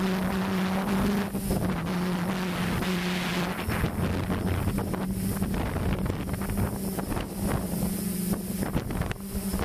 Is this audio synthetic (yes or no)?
no